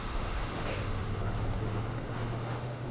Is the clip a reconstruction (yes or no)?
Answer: yes